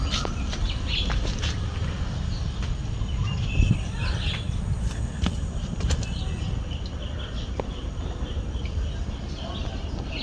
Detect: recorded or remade recorded